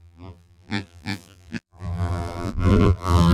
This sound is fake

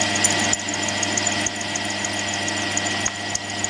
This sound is real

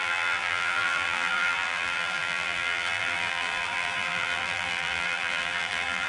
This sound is fake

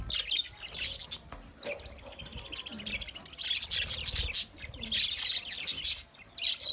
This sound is real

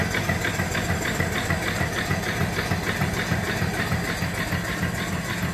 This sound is real